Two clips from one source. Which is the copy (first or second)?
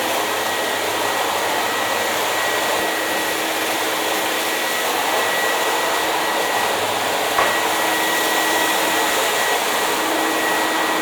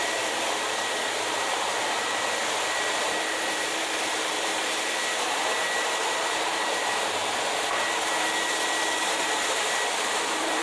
second